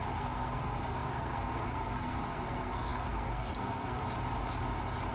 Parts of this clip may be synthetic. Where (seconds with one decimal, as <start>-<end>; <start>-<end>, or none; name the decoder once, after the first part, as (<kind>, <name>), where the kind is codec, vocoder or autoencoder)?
0.0-4.0 (codec, SNAC)